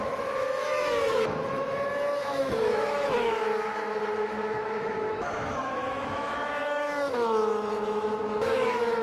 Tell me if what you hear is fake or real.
fake